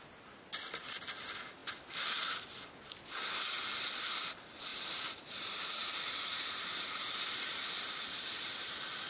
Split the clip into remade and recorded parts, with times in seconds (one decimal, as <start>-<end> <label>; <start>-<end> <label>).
0.0-4.7 recorded; 4.7-8.4 remade; 8.4-9.1 recorded